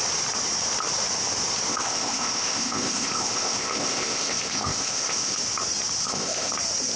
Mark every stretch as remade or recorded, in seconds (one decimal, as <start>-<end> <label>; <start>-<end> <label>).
0.0-1.7 recorded; 1.7-5.4 remade; 5.4-6.0 recorded; 6.0-6.5 remade; 6.5-7.0 recorded